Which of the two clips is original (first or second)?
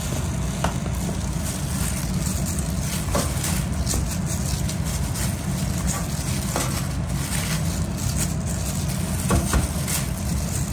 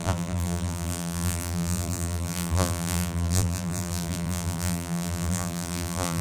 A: first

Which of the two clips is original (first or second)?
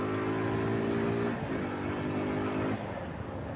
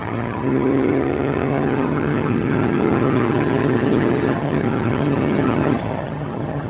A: first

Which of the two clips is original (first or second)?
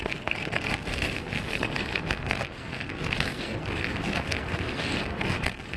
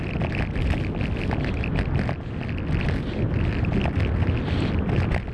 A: second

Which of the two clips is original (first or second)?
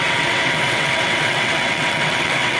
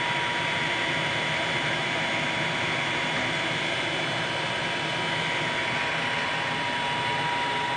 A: second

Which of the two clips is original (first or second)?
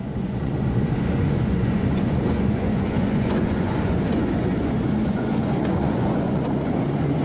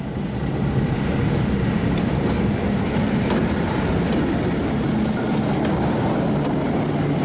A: second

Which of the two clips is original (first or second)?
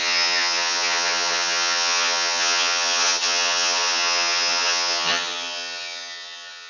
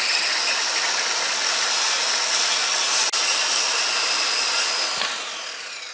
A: second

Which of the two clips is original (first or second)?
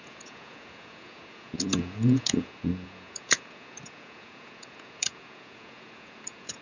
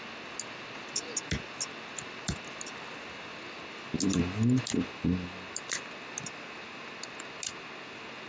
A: second